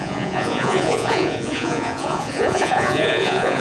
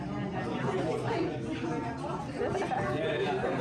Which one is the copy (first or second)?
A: first